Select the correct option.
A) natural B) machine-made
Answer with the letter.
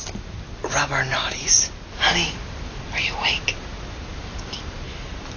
A